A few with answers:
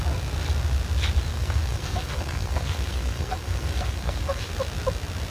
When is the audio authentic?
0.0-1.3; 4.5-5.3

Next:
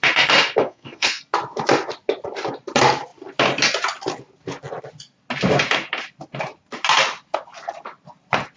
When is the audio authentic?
0.0-0.6; 1.2-8.6